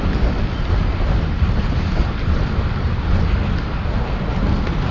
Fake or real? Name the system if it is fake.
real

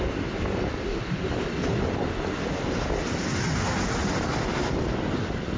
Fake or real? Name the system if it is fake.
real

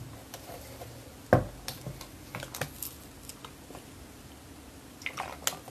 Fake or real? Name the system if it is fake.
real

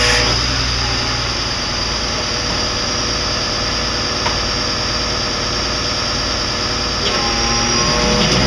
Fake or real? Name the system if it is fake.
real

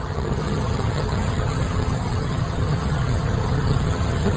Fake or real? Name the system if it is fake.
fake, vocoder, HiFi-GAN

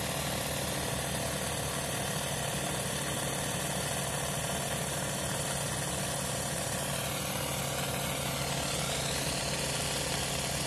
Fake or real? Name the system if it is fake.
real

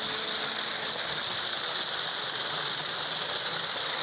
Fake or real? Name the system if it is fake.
real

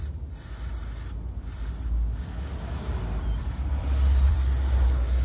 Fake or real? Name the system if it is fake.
fake, vocoder, BigVGAN v2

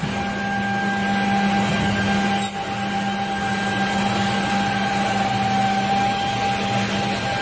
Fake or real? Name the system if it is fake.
real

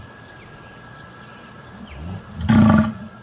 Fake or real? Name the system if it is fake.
real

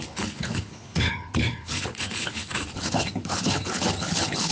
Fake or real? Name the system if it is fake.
fake, codec, HILCodec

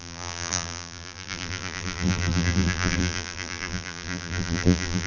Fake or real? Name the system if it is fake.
fake, vocoder, BigVGAN v2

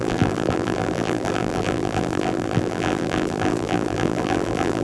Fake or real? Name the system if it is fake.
fake, vocoder, BigVGAN v2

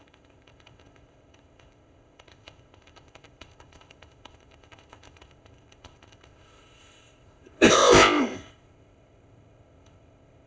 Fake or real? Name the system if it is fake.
fake, codec, ZipCodec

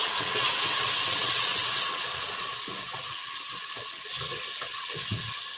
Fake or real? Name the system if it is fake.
fake, vocoder, WaveNeXt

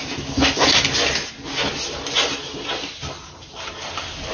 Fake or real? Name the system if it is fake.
real